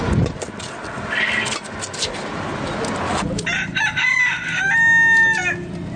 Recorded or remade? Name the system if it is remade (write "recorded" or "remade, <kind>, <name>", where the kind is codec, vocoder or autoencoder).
recorded